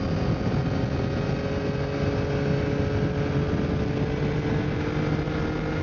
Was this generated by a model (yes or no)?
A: no